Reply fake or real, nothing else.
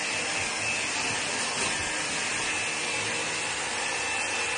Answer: real